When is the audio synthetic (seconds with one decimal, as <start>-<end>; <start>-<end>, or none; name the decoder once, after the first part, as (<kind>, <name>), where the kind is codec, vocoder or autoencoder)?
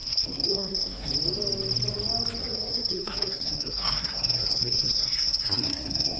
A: 0.0-1.1 (codec, SNAC); 2.4-6.2